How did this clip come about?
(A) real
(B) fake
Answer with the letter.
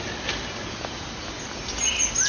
A